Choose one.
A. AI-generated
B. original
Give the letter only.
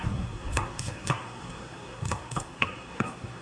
A